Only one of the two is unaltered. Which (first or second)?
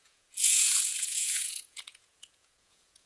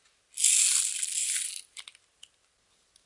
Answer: second